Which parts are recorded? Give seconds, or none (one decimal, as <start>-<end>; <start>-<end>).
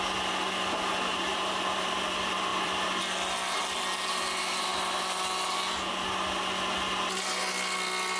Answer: 0.0-1.3; 1.8-2.5; 3.0-8.2